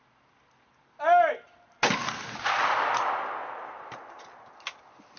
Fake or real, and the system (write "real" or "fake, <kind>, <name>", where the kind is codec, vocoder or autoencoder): real